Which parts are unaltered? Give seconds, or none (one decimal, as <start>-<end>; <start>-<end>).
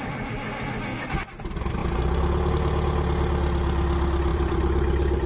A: 0.0-4.3